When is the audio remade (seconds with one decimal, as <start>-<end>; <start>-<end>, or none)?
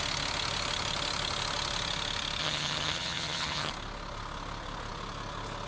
2.4-3.7